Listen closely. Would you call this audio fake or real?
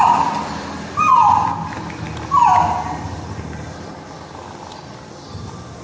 real